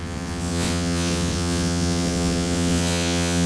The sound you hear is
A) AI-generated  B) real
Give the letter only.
A